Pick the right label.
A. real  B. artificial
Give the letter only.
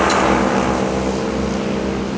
A